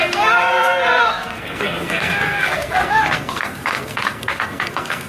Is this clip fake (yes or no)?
yes